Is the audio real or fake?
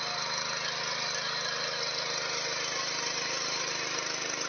real